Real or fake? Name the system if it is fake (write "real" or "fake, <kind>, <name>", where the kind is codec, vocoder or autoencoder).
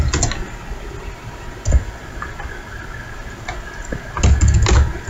real